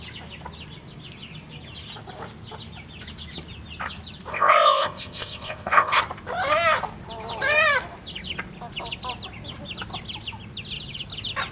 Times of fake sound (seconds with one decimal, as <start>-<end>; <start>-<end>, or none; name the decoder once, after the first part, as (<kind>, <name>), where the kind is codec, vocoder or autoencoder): 4.3-6.0 (codec, ZipCodec)